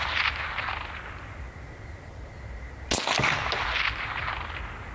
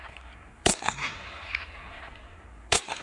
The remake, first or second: second